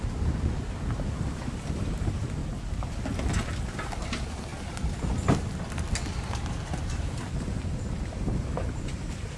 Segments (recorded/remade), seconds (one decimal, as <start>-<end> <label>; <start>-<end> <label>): 0.0-2.4 remade; 2.4-3.4 recorded; 3.4-4.5 remade; 4.5-6.9 recorded; 6.9-9.4 remade